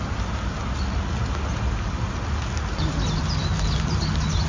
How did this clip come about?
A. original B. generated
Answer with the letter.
A